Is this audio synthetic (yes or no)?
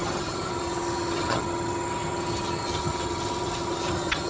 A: yes